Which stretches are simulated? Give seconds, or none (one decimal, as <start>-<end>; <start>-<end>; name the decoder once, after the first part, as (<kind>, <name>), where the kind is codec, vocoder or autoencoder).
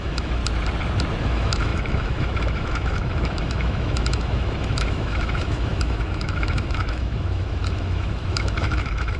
0.0-0.4 (autoencoder, DAC-VAE); 1.2-9.2